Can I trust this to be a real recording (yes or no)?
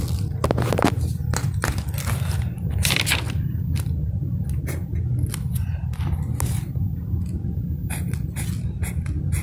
yes